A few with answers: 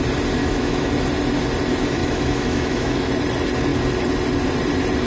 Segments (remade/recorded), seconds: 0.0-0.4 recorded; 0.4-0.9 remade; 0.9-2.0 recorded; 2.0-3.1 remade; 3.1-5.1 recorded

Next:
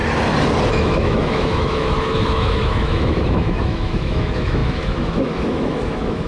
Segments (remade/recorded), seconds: 0.0-0.7 recorded; 0.7-6.3 remade

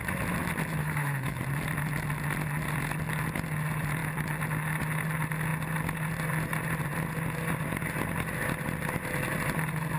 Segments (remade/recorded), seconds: 0.0-0.8 recorded; 0.8-1.4 remade; 1.4-10.0 recorded

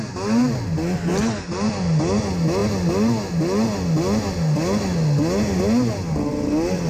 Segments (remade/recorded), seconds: 0.0-6.9 recorded